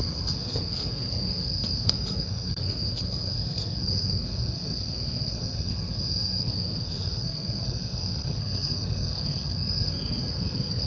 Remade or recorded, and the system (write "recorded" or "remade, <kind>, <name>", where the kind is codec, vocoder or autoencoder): remade, codec, SNAC